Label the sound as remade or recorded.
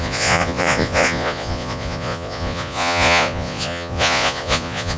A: remade